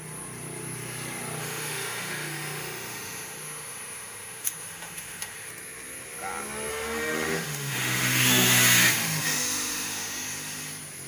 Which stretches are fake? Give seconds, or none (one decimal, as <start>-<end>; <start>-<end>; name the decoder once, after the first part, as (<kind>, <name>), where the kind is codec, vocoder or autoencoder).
1.4-5.5 (autoencoder, DAC-VAE); 6.7-10.7